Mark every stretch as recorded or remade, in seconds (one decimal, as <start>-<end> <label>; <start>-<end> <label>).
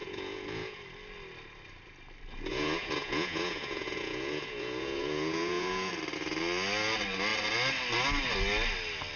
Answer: 0.0-0.8 remade; 0.8-2.5 recorded; 2.5-5.9 remade; 5.9-9.2 recorded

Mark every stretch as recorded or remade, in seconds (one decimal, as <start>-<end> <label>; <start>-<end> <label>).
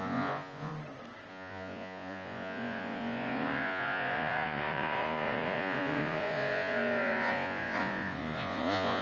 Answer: 0.0-0.7 remade; 0.7-1.3 recorded; 1.3-9.0 remade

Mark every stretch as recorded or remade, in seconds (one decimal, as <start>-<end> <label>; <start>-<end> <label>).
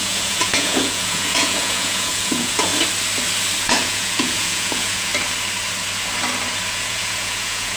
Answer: 0.0-2.7 remade; 2.7-3.6 recorded; 3.6-5.1 remade; 5.1-6.7 recorded; 6.7-7.8 remade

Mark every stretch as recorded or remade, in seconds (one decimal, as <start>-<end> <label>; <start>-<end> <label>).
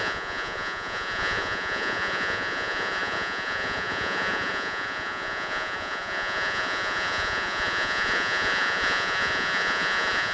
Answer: 0.0-10.3 remade